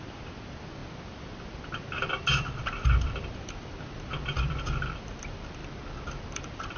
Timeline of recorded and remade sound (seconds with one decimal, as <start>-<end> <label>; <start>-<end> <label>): 0.0-5.6 remade; 5.6-6.2 recorded; 6.2-6.8 remade